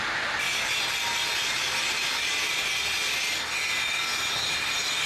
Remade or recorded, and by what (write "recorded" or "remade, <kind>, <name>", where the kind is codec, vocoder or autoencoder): recorded